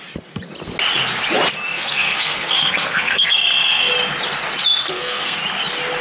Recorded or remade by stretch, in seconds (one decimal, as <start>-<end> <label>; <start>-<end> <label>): 0.0-1.7 recorded; 1.7-3.9 remade; 3.9-4.8 recorded; 4.8-5.4 remade; 5.4-6.0 recorded